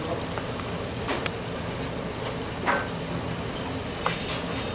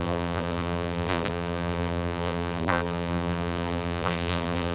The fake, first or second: second